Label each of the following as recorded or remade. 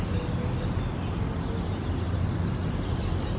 recorded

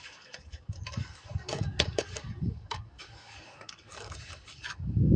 remade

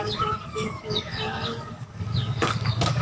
remade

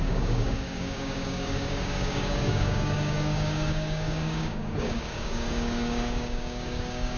remade